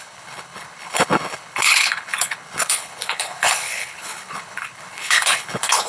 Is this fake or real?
fake